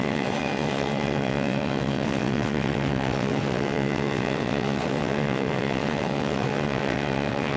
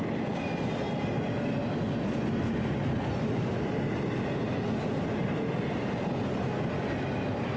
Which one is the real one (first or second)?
second